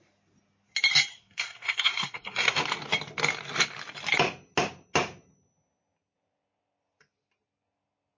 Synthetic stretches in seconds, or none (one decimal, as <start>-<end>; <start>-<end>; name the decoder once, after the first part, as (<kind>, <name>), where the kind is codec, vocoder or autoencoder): 1.1-2.6 (codec, SNAC)